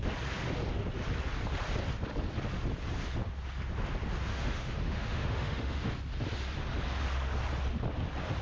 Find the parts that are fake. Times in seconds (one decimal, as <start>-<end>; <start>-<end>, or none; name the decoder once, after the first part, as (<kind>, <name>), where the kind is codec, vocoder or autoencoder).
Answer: 4.3-5.9 (autoencoder, DAC-VAE)